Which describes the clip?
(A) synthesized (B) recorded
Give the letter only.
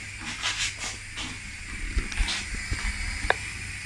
B